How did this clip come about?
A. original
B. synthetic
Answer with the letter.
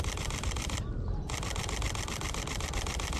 A